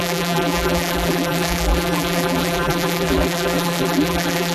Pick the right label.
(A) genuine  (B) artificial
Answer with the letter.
B